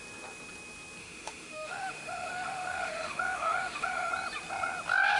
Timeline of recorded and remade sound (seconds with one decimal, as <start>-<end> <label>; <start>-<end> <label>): 0.0-1.0 recorded; 1.0-4.1 remade; 4.1-5.2 recorded